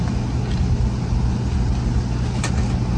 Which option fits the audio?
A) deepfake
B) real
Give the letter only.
B